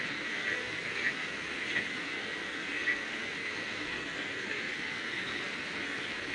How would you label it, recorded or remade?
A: remade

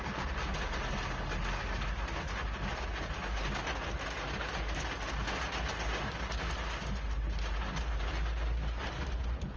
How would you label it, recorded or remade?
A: recorded